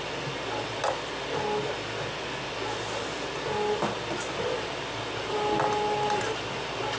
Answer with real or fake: real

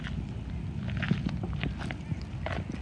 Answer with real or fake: real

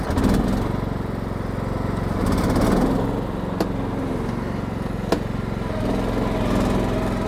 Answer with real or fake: real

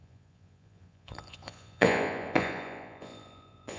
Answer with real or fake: fake